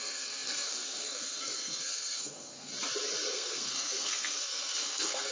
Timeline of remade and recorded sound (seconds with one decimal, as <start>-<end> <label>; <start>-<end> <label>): 0.0-2.7 remade; 2.7-3.3 recorded; 3.3-5.3 remade